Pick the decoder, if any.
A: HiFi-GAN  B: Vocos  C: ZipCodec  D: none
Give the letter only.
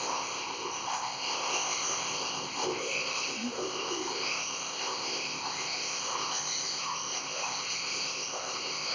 C